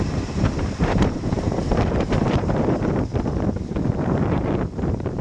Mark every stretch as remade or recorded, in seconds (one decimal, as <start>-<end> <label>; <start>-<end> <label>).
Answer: 0.0-3.1 remade; 3.1-3.8 recorded; 3.8-5.2 remade